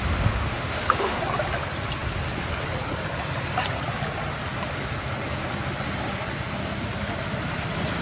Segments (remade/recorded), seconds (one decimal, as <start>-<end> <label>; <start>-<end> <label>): 0.0-1.2 remade; 1.2-8.0 recorded